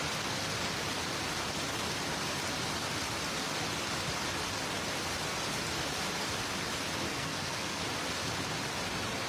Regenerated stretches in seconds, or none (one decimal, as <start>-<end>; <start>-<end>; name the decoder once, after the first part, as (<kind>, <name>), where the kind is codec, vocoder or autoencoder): 7.1-7.8 (codec, SNAC)